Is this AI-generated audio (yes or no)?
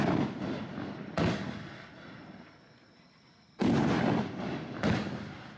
no